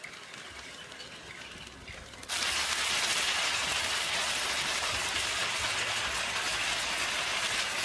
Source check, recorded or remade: recorded